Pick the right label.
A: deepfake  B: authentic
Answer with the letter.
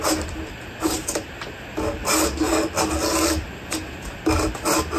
B